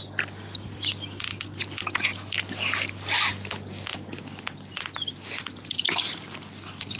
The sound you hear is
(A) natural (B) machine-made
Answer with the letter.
A